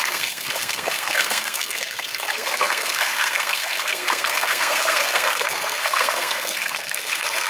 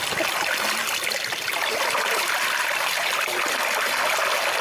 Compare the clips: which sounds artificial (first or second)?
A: first